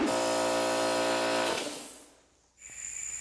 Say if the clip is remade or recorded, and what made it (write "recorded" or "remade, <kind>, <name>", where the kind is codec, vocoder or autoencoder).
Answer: recorded